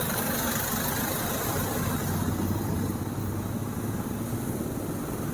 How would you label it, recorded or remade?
recorded